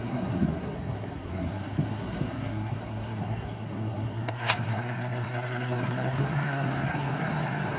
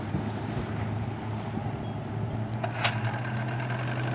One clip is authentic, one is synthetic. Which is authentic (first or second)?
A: second